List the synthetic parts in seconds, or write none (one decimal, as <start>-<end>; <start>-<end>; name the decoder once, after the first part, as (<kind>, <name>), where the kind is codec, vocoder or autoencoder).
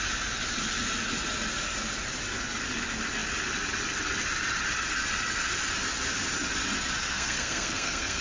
7.0-8.2 (codec, SNAC)